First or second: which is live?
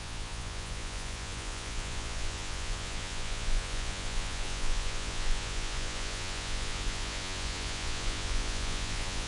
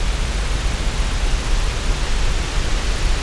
second